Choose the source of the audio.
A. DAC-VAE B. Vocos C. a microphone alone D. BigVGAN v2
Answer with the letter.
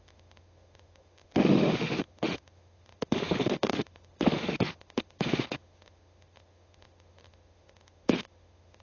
A